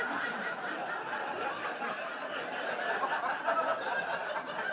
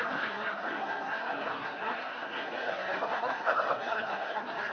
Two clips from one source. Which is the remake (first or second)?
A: second